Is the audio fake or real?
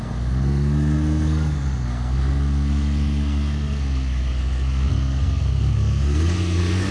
fake